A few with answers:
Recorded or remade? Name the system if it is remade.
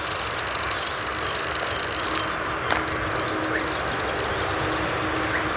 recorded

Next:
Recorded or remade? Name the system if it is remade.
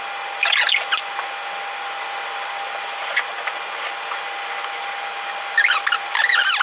recorded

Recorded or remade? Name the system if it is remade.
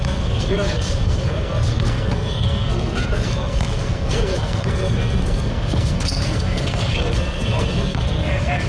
remade, codec, SNAC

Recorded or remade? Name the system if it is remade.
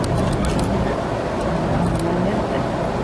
recorded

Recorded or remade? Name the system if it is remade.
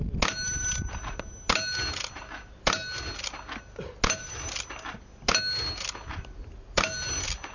recorded